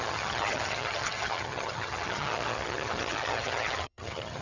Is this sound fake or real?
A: fake